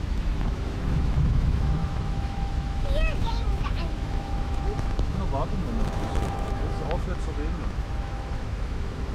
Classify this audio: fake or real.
fake